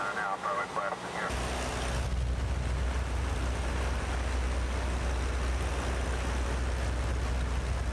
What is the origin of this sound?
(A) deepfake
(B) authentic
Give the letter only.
B